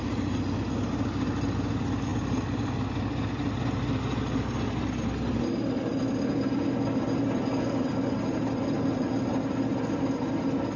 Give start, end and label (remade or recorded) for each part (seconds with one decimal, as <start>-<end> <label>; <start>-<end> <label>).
0.0-10.8 recorded